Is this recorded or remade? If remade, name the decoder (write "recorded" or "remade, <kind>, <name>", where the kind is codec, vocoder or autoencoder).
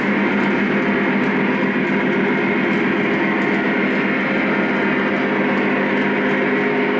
recorded